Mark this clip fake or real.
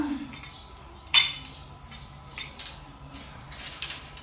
real